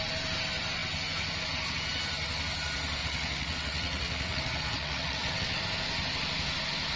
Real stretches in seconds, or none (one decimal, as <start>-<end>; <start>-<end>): 0.0-3.0; 5.6-7.0